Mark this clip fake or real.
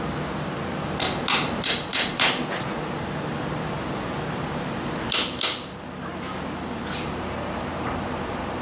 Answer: real